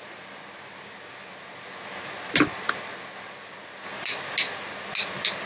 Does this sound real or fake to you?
real